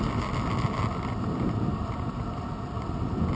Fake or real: real